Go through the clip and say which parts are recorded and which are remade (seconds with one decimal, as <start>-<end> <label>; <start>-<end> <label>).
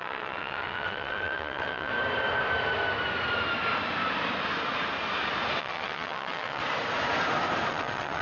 0.0-1.9 remade; 1.9-5.6 recorded; 5.6-6.6 remade; 6.6-7.7 recorded; 7.7-8.2 remade